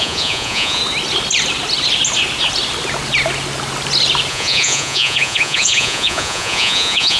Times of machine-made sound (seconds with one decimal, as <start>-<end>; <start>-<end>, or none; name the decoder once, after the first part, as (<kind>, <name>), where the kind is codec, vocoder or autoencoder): 0.0-0.8 (vocoder, Vocos); 4.3-7.2